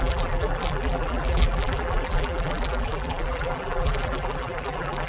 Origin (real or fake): fake